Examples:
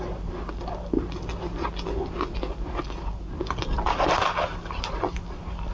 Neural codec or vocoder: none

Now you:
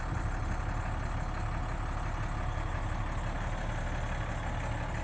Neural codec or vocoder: none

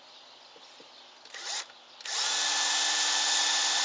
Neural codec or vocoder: none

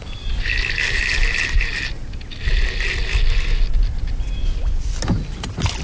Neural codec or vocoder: none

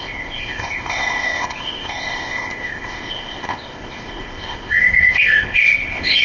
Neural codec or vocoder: codec, ZipCodec